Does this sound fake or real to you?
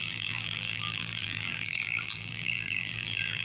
fake